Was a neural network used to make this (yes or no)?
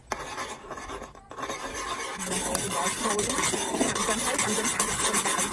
no